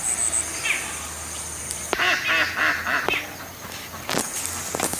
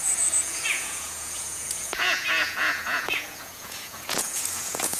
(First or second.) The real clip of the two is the first